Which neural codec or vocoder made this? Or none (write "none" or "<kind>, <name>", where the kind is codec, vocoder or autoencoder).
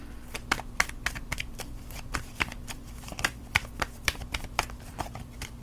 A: vocoder, BigVGAN v2